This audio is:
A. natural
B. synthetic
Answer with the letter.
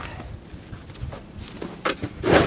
A